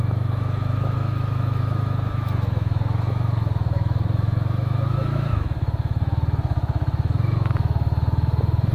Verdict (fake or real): fake